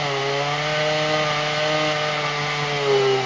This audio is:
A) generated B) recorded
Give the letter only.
B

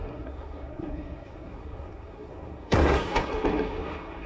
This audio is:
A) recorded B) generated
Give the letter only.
B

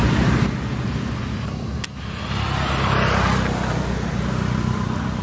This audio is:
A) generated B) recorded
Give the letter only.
B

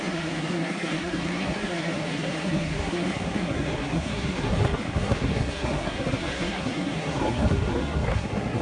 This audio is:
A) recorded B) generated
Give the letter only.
B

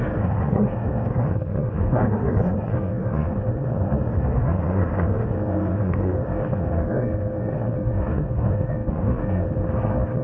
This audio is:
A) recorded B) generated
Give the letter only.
B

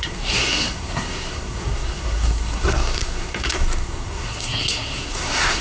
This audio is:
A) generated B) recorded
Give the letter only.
A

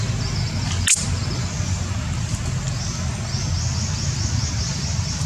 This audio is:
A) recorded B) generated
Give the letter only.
A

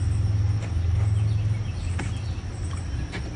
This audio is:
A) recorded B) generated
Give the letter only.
A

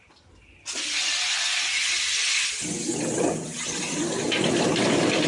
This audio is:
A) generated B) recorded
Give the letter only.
B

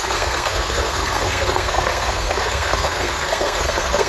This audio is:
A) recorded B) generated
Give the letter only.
B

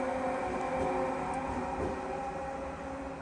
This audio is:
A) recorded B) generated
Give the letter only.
A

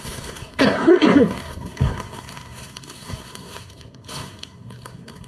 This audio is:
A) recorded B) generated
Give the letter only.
B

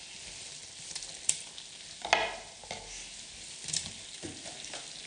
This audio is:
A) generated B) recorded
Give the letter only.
B